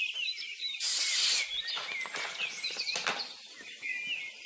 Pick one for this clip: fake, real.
real